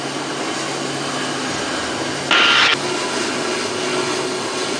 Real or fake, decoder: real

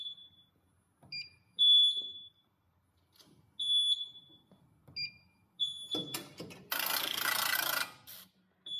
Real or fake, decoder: real